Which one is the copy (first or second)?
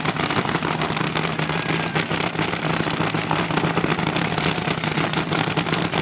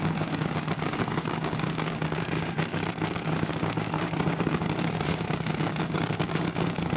second